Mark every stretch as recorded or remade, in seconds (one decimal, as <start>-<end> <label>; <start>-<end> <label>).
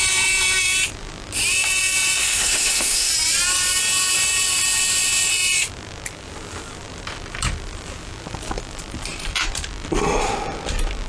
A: 0.0-2.2 recorded; 2.2-3.1 remade; 3.1-11.1 recorded